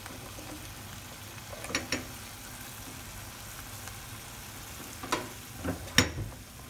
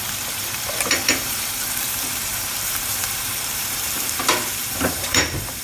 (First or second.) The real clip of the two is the first